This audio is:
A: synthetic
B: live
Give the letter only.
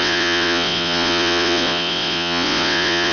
A